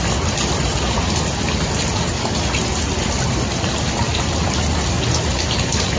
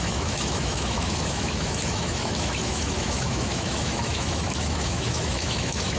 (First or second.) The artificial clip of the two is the second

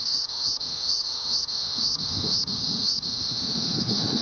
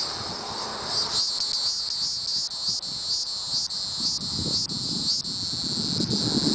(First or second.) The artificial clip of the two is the first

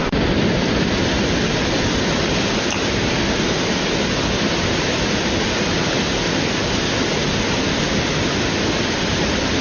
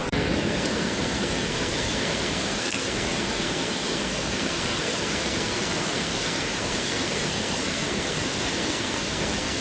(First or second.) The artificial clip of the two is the second